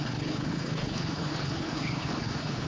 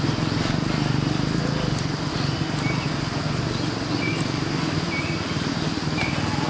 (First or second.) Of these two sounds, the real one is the second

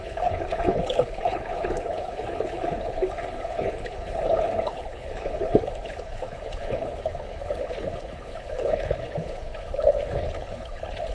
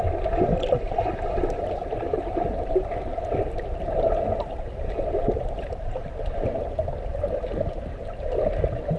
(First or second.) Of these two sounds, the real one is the second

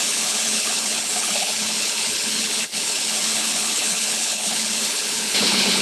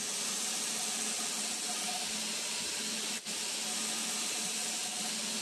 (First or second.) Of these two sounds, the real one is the second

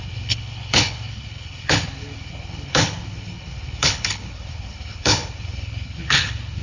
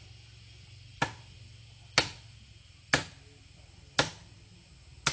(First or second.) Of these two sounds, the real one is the second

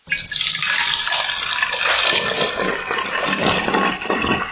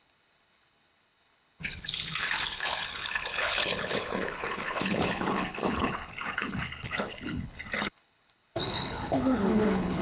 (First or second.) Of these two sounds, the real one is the first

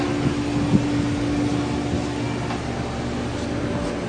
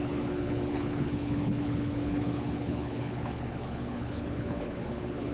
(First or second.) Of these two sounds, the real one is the first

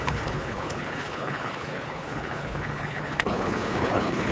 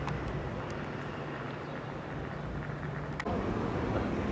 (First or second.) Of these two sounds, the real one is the second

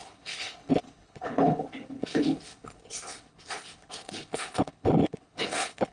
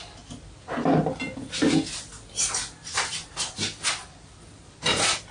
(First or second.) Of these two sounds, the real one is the second